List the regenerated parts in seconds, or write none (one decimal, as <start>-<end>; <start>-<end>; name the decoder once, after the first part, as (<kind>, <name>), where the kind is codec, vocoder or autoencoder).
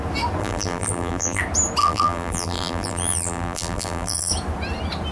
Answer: 0.4-1.4 (vocoder, BigVGAN v2); 1.8-4.3